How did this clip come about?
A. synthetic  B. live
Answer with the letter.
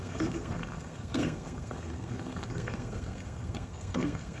A